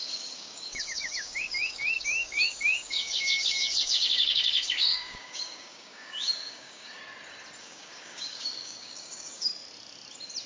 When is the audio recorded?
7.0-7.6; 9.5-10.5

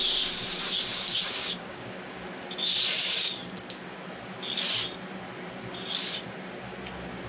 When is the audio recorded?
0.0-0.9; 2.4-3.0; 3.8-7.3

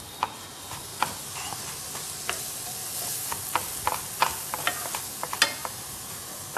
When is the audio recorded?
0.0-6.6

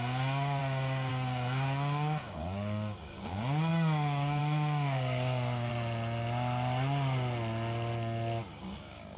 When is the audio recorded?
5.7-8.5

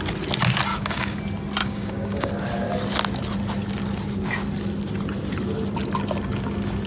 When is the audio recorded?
0.0-0.7; 1.2-1.6; 2.3-6.9